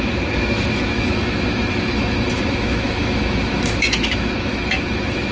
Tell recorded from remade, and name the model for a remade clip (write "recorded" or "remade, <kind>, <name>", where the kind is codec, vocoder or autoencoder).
remade, autoencoder, DAC-VAE